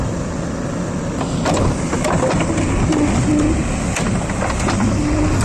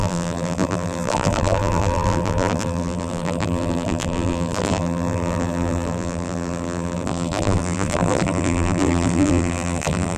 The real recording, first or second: first